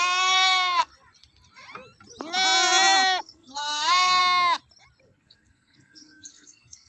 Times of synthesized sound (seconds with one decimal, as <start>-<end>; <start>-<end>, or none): 0.0-0.9; 3.2-4.2; 5.0-6.9